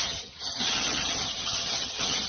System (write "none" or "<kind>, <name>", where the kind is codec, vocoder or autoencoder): vocoder, HiFi-GAN